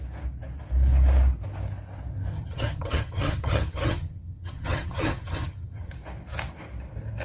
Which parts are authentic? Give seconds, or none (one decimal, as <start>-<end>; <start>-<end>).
0.0-2.3; 5.9-7.2